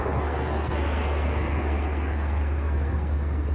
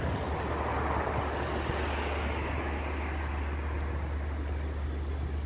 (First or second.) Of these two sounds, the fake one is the first